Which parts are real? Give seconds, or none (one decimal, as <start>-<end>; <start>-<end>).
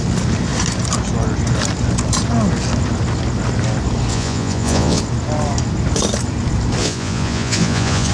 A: 0.0-4.1; 5.0-6.8